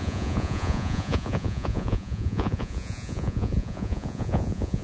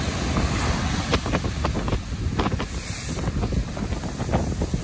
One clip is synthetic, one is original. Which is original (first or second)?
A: second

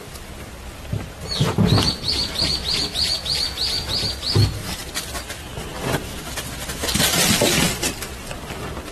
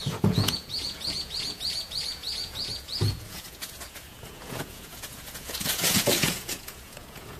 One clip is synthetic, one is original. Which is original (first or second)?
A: first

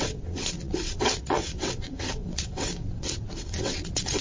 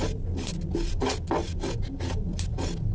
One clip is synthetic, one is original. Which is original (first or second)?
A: second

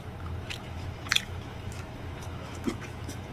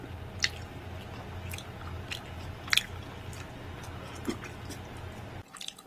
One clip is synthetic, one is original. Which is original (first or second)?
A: second